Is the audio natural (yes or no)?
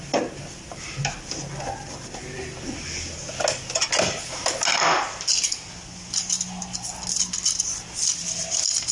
yes